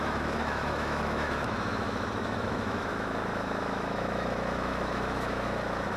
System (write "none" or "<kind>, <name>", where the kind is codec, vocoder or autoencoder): autoencoder, DAC-VAE